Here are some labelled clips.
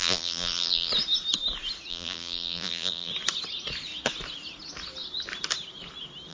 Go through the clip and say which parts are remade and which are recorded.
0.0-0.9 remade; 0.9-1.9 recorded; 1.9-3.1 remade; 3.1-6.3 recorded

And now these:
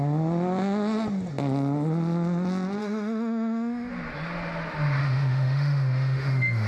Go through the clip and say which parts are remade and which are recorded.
0.0-2.8 recorded; 2.8-3.9 remade; 3.9-5.0 recorded; 5.0-6.7 remade

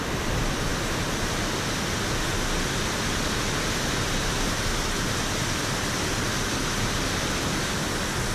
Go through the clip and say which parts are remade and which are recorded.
0.0-8.3 recorded